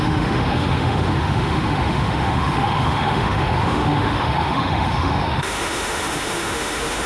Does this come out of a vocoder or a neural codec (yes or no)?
yes